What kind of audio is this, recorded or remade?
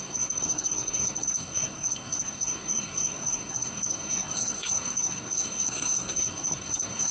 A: remade